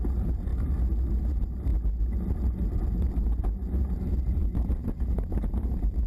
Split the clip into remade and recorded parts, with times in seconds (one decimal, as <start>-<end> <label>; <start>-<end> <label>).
0.0-0.5 remade; 0.5-1.1 recorded; 1.1-1.7 remade; 1.7-3.8 recorded; 3.8-6.1 remade